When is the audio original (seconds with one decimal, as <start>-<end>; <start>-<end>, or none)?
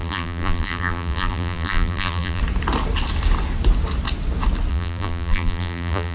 2.4-4.7